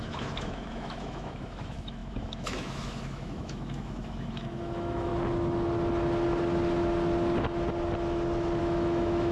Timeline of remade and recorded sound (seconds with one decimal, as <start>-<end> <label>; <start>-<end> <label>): 0.0-5.1 remade; 5.1-8.6 recorded; 8.6-9.3 remade